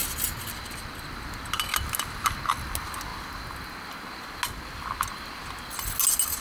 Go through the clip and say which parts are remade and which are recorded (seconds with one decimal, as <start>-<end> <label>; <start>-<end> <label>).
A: 0.0-6.4 recorded